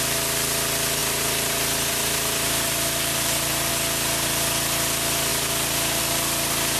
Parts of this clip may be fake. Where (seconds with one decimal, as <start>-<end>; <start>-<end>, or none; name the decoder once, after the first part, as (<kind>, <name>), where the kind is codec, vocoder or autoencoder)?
1.0-3.7 (vocoder, BigVGAN v2)